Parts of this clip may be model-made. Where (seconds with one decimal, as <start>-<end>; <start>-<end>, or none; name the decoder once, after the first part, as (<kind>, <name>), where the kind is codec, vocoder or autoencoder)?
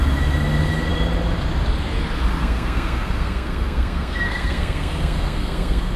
2.4-6.0 (codec, SNAC)